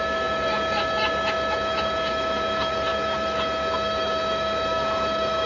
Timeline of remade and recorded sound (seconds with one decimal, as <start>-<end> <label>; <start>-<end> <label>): 0.0-5.5 remade